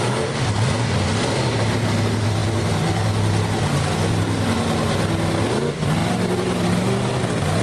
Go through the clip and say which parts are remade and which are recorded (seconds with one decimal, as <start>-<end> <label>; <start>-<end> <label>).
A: 0.0-7.6 recorded